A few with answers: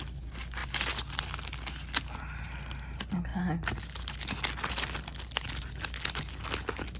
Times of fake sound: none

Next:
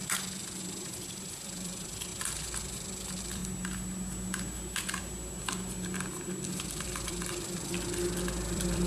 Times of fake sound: 0.0-2.1 (vocoder, BigVGAN v2); 2.6-3.4; 6.5-8.9

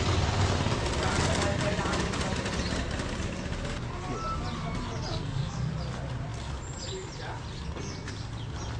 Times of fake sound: 5.1-5.7 (codec, SNAC)